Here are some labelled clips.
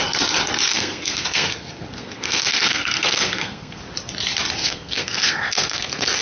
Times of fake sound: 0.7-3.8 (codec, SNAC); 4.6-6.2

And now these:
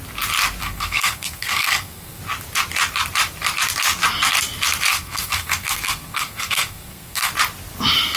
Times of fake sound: 0.6-2.2 (codec, SNAC); 4.9-7.3

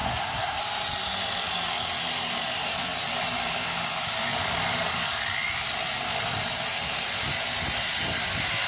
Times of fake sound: 0.0-0.6 (codec, SNAC)

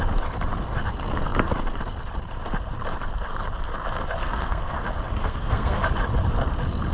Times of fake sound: 4.2-4.8 (codec, SNAC); 5.2-5.8

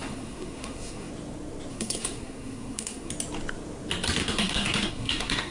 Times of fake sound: 0.0-1.1 (codec, SNAC); 1.7-3.1; 4.2-5.5